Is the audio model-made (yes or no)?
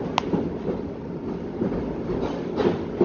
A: no